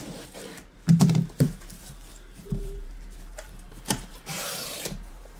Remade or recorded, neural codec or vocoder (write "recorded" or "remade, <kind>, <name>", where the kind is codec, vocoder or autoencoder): remade, vocoder, BigVGAN v2